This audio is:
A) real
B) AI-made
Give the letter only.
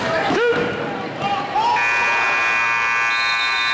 A